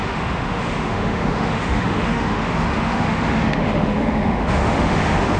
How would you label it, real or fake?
fake